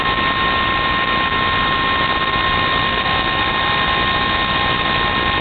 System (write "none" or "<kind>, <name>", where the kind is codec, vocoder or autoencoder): none